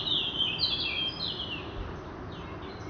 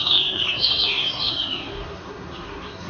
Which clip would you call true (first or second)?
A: first